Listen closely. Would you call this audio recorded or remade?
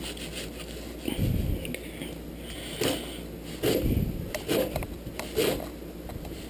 recorded